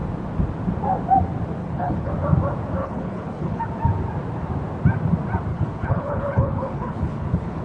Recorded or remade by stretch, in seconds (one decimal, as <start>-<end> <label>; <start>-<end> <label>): 0.0-1.6 recorded; 1.6-2.1 remade; 2.1-2.8 recorded; 2.8-3.6 remade; 3.6-5.5 recorded; 5.5-7.6 remade